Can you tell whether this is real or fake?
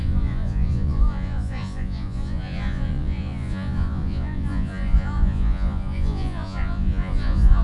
fake